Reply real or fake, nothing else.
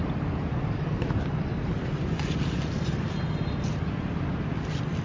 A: real